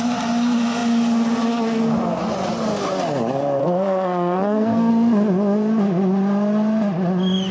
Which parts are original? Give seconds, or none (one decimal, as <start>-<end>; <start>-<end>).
0.0-3.6; 4.9-7.5